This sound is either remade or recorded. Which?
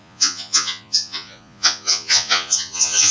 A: remade